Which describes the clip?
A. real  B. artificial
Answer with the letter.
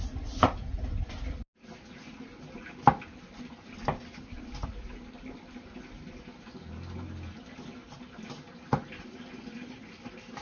A